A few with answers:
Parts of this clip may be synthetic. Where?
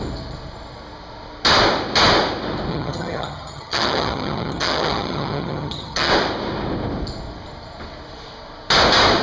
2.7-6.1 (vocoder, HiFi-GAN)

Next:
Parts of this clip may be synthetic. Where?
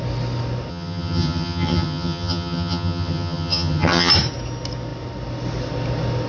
0.7-4.1 (vocoder, HiFi-GAN)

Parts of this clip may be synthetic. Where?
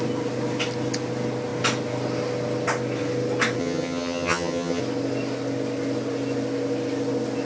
3.6-4.8 (vocoder, HiFi-GAN)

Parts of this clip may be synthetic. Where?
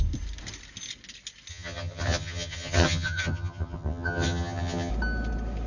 1.5-4.9 (vocoder, HiFi-GAN)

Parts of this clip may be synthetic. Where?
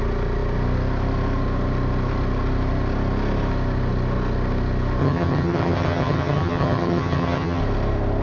5.0-7.6 (vocoder, HiFi-GAN)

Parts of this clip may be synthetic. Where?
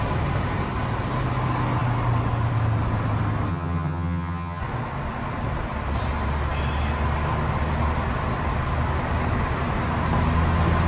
3.5-4.6 (vocoder, HiFi-GAN)